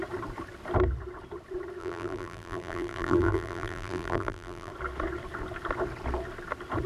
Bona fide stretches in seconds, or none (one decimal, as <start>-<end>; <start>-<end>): 0.0-1.8; 4.7-6.9